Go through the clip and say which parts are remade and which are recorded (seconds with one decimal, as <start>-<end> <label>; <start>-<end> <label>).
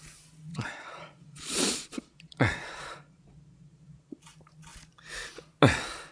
0.0-0.5 recorded; 0.5-4.2 remade; 4.2-6.1 recorded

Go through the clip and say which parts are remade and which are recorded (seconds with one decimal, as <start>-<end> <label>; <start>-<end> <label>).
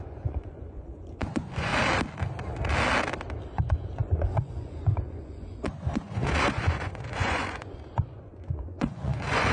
0.0-1.7 remade; 1.7-3.5 recorded; 3.5-9.5 remade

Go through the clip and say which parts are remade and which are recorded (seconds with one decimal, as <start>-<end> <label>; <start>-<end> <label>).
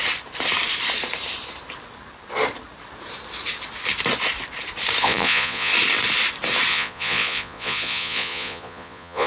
0.0-5.0 recorded; 5.0-5.7 remade; 5.7-6.7 recorded; 6.7-9.3 remade